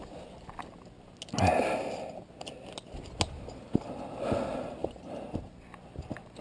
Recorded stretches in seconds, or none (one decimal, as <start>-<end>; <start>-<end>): 0.0-4.8; 5.6-6.4